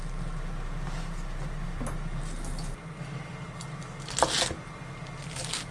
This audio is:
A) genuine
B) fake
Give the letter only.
A